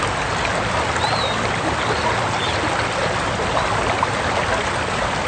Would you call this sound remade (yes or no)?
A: no